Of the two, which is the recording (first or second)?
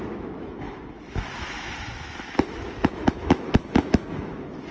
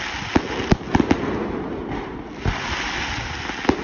second